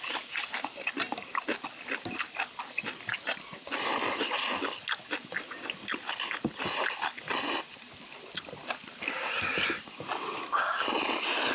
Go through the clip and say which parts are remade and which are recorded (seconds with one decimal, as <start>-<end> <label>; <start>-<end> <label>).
0.0-11.5 recorded